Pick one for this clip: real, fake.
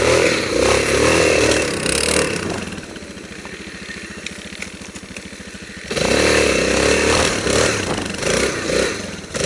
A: real